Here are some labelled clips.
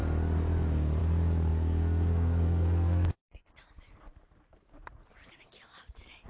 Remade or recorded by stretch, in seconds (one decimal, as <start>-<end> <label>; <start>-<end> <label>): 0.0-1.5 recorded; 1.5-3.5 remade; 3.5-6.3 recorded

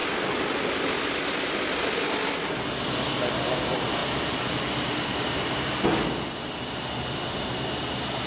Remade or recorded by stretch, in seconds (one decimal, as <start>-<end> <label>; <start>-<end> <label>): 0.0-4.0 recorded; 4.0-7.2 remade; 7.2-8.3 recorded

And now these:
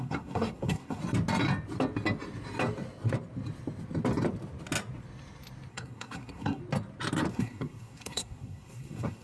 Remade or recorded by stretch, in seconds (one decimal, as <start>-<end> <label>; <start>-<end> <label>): 0.0-1.0 remade; 1.0-5.7 recorded; 5.7-6.6 remade; 6.6-7.3 recorded; 7.3-9.2 remade

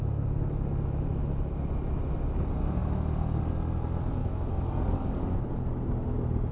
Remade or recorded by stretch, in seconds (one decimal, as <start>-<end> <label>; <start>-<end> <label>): 0.0-4.2 recorded; 4.2-5.4 remade; 5.4-6.5 recorded

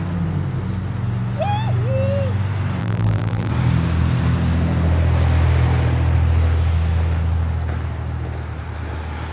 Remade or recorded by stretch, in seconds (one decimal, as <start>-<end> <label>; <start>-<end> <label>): 0.0-2.8 recorded; 2.8-3.5 remade; 3.5-9.3 recorded

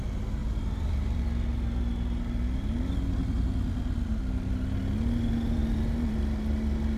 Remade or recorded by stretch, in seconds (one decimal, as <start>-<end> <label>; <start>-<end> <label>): 0.0-0.4 recorded; 0.4-1.2 remade; 1.2-7.0 recorded

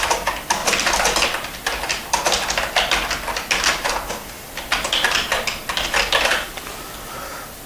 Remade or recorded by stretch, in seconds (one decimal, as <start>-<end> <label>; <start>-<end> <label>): 0.0-0.6 remade; 0.6-4.1 recorded; 4.1-7.7 remade

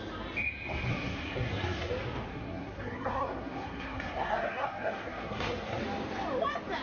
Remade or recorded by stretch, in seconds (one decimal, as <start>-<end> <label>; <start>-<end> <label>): 0.0-0.9 recorded; 0.9-1.9 remade; 1.9-2.3 recorded; 2.3-5.8 remade; 5.8-6.8 recorded